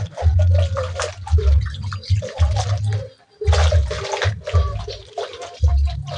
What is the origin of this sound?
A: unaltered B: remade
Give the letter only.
A